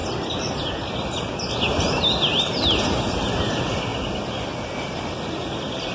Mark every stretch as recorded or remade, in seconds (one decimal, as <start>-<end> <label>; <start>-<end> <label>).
0.0-5.9 recorded